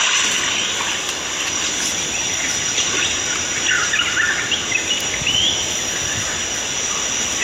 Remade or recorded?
recorded